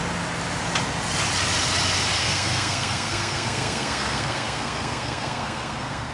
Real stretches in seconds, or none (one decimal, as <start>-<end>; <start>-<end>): 0.0-2.2